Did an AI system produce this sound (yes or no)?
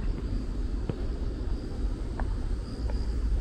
no